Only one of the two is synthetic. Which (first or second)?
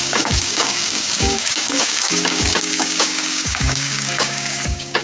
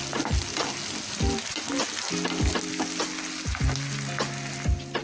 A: first